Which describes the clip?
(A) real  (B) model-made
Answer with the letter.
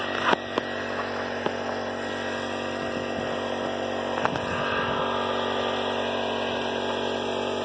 A